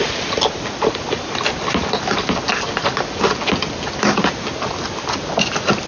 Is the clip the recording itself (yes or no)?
yes